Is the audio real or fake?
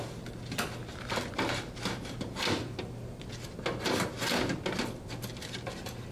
real